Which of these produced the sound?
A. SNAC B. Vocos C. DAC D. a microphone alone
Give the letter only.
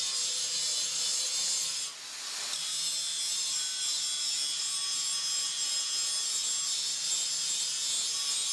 D